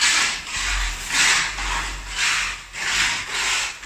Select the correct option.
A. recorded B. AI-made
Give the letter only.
A